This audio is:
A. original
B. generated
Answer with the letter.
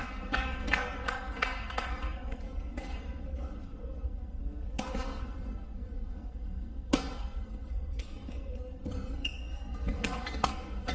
B